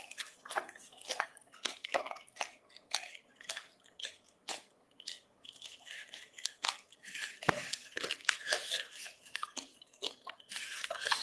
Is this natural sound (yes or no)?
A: no